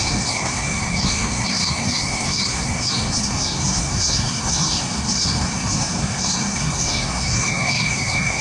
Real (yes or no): no